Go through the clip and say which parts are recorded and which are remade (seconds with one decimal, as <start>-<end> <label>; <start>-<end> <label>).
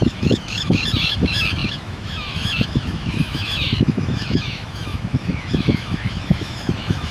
0.0-7.1 remade